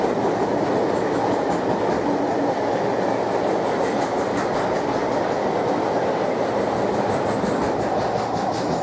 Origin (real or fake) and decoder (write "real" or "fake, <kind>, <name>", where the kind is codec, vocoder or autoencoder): real